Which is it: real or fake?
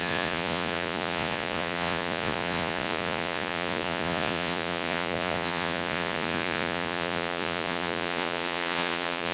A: fake